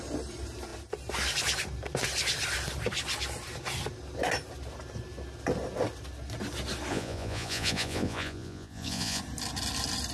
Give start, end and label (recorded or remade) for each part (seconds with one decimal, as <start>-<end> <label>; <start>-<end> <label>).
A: 0.0-6.9 recorded; 6.9-9.2 remade; 9.2-10.1 recorded